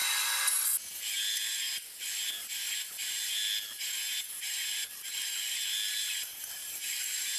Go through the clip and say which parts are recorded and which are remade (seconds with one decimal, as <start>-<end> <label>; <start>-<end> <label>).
0.0-6.6 recorded; 6.6-7.4 remade